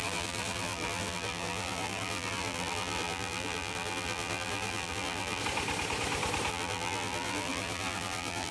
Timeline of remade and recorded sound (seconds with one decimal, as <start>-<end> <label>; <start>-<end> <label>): 0.0-5.4 remade; 5.4-6.5 recorded; 6.5-8.5 remade